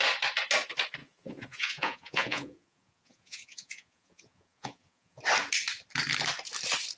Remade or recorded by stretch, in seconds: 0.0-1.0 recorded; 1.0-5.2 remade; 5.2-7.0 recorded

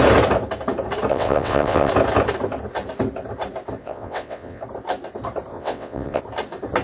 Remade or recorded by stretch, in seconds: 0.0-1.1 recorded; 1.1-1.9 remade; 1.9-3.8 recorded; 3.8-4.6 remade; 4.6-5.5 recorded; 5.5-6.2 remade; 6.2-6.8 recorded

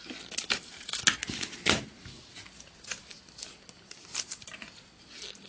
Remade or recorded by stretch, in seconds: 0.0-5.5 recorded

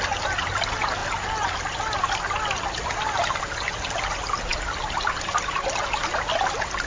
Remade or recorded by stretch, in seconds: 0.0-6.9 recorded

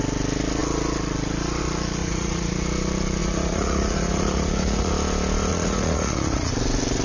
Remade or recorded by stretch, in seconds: 0.0-2.0 recorded; 2.0-2.5 remade; 2.5-3.2 recorded; 3.2-4.9 remade; 4.9-5.5 recorded; 5.5-6.5 remade; 6.5-7.0 recorded